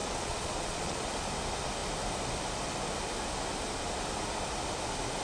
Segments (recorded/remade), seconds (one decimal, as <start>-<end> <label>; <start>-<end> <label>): 0.0-1.0 remade; 1.0-5.2 recorded